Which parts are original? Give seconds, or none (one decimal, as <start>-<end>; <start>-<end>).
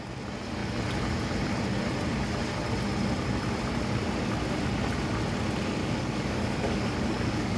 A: 0.0-5.8